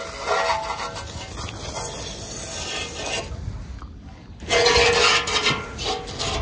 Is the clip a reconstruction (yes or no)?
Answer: no